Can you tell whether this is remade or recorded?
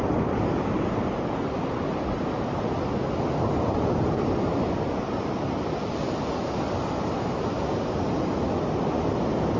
recorded